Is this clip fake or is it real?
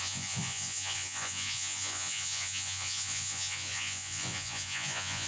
fake